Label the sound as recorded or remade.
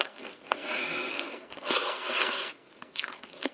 remade